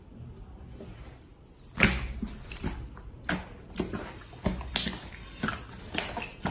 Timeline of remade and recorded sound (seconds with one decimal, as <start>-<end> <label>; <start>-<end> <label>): 0.0-6.5 recorded